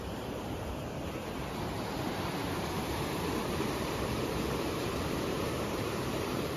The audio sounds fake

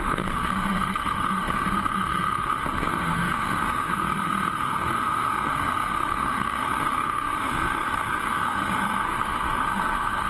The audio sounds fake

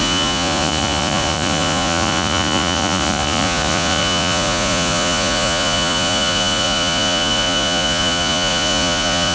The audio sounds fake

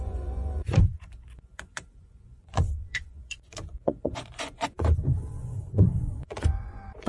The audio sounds fake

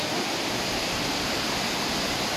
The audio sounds real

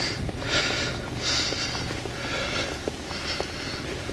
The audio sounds real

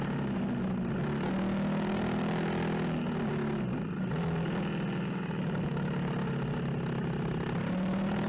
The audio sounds real